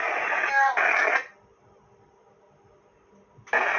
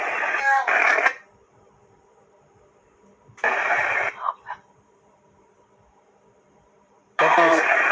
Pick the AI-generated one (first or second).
second